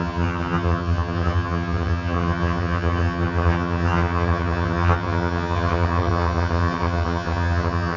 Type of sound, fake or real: fake